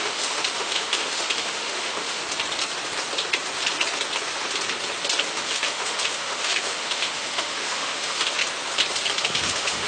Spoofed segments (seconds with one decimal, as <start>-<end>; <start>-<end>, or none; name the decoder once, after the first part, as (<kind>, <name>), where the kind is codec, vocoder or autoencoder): 0.0-2.2 (autoencoder, DAC-VAE); 5.3-8.4; 9.2-9.9